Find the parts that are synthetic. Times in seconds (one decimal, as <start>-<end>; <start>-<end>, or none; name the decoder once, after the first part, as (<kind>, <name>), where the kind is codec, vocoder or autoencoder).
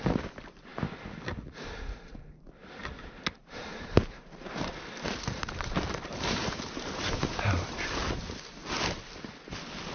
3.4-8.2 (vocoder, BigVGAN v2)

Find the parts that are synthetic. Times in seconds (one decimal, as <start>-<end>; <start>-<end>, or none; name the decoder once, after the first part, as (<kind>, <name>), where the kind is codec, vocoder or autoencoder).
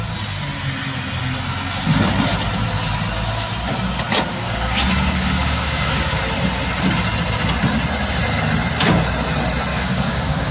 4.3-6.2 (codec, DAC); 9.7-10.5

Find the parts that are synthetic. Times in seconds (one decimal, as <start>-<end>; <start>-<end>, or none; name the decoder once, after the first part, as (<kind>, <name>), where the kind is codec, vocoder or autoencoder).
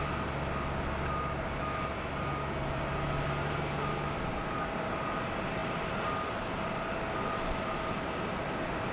none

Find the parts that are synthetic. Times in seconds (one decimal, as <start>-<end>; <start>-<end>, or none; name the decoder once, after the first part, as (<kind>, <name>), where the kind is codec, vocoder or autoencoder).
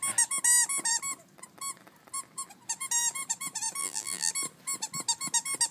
3.8-4.3 (vocoder, BigVGAN v2)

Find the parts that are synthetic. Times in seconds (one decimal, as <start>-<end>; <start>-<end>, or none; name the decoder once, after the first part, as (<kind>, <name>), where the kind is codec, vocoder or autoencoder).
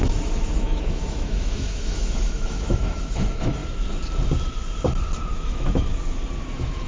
0.0-3.6 (autoencoder, DAC-VAE); 5.3-5.9; 6.5-6.9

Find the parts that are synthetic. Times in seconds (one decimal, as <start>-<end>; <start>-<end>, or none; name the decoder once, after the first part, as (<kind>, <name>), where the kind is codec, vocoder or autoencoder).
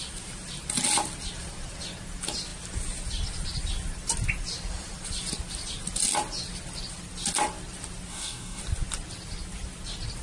8.1-8.6 (codec, DAC)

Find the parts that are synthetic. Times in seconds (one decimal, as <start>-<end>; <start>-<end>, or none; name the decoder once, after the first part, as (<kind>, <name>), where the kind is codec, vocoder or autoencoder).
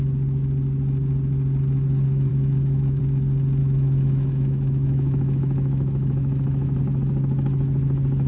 2.3-3.0 (autoencoder, DAC-VAE); 3.6-6.8